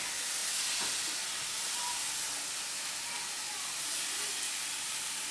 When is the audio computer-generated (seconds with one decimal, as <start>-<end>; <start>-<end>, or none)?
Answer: none